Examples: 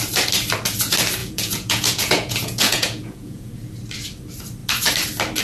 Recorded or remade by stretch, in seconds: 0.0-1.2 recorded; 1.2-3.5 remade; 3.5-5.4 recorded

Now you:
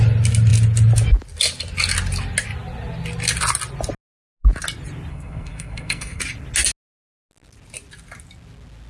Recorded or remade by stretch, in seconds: 0.0-5.1 recorded; 5.1-6.2 remade; 6.2-8.9 recorded

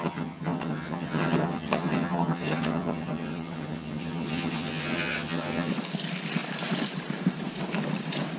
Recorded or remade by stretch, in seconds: 0.0-5.7 remade; 5.7-8.4 recorded

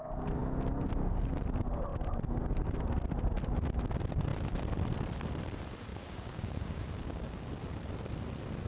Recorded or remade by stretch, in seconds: 0.0-5.9 recorded; 5.9-7.5 remade; 7.5-8.7 recorded

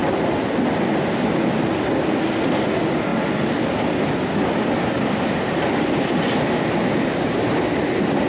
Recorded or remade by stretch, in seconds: 0.0-8.3 recorded

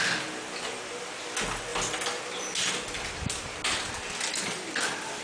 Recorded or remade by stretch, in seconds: 0.0-5.2 recorded

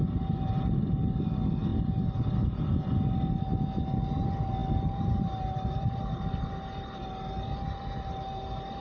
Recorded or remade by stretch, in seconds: 0.0-8.8 recorded

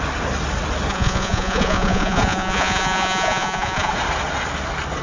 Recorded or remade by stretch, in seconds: 0.0-0.9 recorded; 0.9-3.9 remade; 3.9-5.0 recorded